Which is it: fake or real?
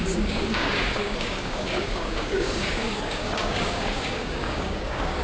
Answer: fake